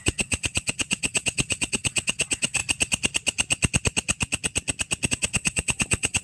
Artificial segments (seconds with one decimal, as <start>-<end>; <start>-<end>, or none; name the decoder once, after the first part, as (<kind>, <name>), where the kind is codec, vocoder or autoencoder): 0.0-2.6 (vocoder, WaveNeXt); 5.1-6.2